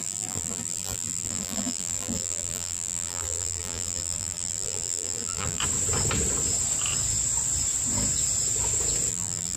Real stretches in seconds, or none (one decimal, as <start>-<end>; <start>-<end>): 5.6-9.1